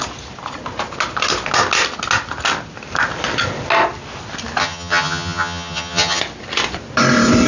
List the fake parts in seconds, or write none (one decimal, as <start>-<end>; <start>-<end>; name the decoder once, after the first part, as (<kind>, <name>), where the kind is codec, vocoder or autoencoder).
4.6-6.2 (vocoder, HiFi-GAN)